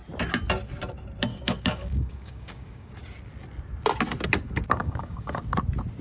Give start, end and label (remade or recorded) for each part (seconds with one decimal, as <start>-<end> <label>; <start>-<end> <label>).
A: 0.0-1.3 recorded; 1.3-2.9 remade; 2.9-4.8 recorded; 4.8-5.4 remade; 5.4-6.0 recorded